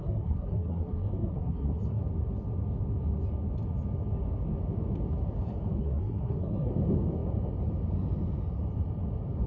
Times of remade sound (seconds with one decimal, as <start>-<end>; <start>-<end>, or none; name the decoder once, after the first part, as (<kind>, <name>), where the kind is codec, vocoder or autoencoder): 0.0-2.0 (codec, SNAC); 5.8-6.7